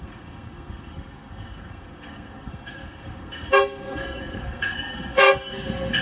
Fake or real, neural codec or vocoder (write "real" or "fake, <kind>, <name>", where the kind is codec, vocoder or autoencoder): fake, codec, SNAC